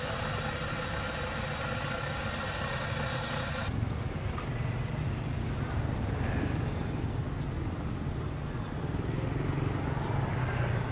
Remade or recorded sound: recorded